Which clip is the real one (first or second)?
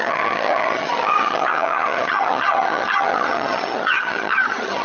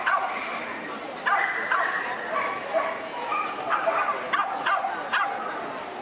second